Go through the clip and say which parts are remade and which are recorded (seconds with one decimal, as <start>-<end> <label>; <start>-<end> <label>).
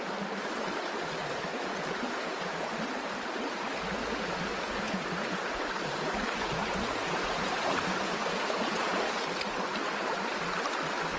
0.0-1.5 recorded; 1.5-2.7 remade; 2.7-4.5 recorded; 4.5-9.0 remade; 9.0-11.2 recorded